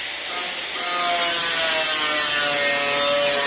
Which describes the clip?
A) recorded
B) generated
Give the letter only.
A